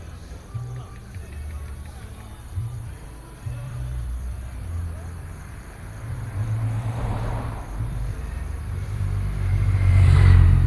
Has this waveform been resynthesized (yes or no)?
yes